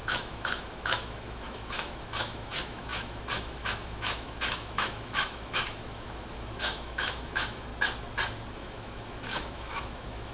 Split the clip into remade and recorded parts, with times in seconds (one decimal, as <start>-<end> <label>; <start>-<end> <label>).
0.0-7.7 remade; 7.7-8.5 recorded; 8.5-10.3 remade